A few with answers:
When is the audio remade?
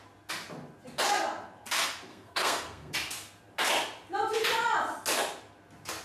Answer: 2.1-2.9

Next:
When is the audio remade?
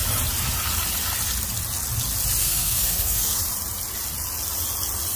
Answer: 2.4-3.4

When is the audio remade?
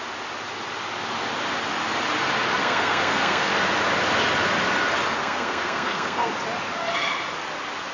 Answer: 2.6-3.5; 5.2-6.3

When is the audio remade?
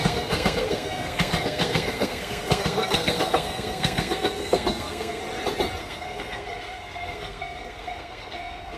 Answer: 0.0-5.2; 5.8-8.8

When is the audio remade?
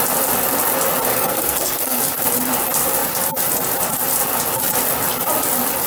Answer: 1.1-2.0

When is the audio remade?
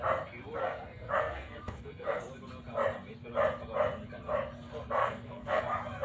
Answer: 0.6-2.2; 5.0-5.6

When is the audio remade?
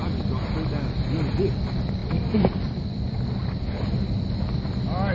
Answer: none